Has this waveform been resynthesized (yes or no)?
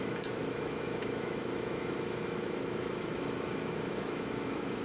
yes